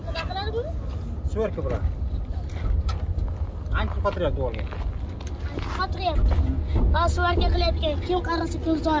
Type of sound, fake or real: real